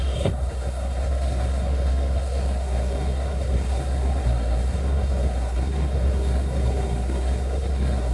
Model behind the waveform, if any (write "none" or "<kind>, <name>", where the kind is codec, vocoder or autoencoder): codec, SNAC